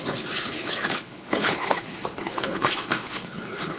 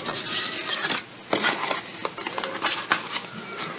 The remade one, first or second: first